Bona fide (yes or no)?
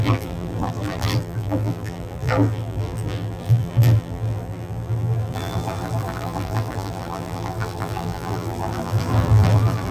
no